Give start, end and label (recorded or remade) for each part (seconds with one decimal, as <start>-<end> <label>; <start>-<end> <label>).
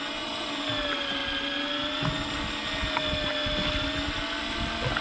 0.0-5.0 recorded